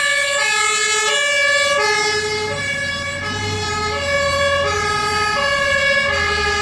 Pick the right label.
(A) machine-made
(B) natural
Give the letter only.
B